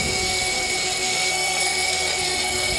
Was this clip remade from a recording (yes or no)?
yes